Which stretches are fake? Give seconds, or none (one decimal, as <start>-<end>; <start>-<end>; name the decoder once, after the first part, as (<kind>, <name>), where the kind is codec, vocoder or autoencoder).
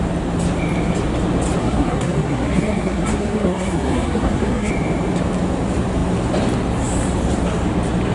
1.6-4.7 (codec, SNAC)